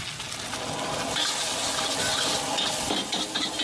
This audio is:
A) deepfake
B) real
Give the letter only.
B